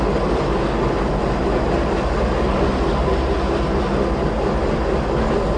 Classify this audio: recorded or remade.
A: recorded